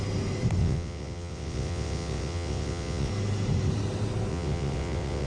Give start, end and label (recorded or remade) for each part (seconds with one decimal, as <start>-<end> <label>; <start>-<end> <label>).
0.0-0.6 recorded; 0.6-3.1 remade; 3.1-4.3 recorded; 4.3-5.3 remade